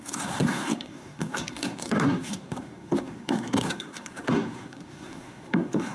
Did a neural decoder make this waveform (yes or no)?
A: yes